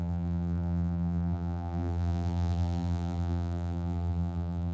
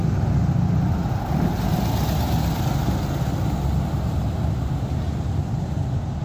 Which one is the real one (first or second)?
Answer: second